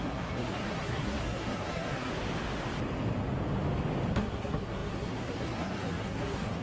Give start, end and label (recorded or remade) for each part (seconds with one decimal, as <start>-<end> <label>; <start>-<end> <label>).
0.0-2.1 remade; 2.1-4.1 recorded; 4.1-6.6 remade

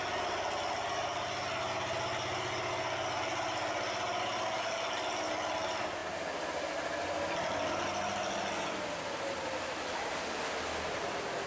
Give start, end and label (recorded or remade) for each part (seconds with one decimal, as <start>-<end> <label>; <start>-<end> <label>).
0.0-11.5 recorded

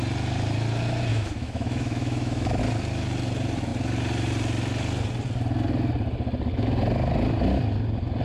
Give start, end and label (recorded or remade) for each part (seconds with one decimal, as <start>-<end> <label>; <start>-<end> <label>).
0.0-1.1 recorded; 1.1-2.6 remade; 2.6-8.2 recorded

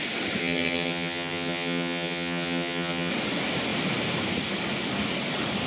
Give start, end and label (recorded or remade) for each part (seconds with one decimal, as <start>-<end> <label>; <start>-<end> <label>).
0.0-0.4 recorded; 0.4-3.1 remade; 3.1-5.7 recorded

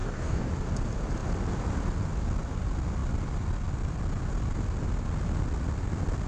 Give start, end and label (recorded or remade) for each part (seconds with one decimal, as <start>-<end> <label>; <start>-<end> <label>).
0.0-0.5 remade; 0.5-6.3 recorded